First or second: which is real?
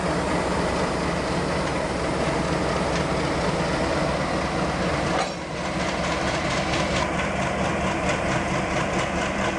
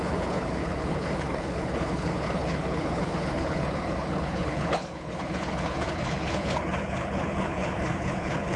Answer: first